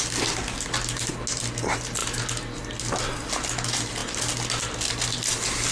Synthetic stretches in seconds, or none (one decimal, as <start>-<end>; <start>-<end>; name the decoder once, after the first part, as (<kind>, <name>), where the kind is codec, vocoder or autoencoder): none